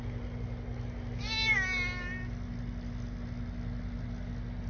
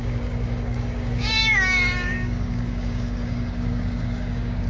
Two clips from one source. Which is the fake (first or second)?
second